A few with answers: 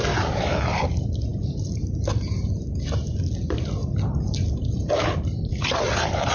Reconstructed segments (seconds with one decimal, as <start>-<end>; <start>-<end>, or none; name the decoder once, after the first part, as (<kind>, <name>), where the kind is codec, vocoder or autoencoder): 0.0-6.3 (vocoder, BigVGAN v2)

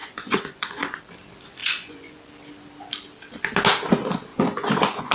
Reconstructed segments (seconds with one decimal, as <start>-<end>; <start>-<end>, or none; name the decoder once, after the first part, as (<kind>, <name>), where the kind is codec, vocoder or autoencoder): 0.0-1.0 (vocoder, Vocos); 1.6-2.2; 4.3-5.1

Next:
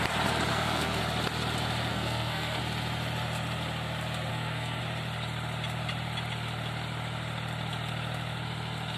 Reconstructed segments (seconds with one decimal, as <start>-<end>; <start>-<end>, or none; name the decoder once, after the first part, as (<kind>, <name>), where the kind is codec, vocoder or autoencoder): 0.5-1.0 (codec, SNAC); 1.9-2.6; 4.3-4.8

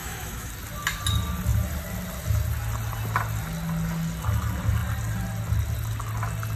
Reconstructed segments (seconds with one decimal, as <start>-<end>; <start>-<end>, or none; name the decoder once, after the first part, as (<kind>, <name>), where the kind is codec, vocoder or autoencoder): 0.0-0.5 (autoencoder, DAC-VAE)

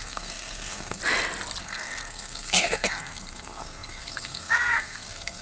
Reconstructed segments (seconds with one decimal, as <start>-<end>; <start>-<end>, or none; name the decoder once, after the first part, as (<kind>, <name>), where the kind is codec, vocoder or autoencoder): 0.0-1.0 (codec, SNAC); 1.6-5.4